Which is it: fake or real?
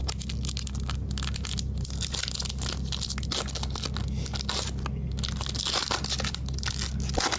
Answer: real